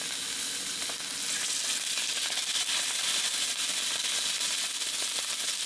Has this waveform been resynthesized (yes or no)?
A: no